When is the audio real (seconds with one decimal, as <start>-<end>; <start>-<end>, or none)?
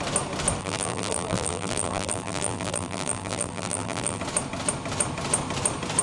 0.0-0.6; 4.2-6.0